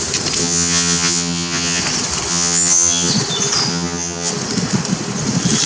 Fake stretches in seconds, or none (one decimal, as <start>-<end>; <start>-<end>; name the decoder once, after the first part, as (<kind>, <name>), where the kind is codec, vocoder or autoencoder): 0.4-1.8 (vocoder, HiFi-GAN); 2.3-3.1; 3.7-4.3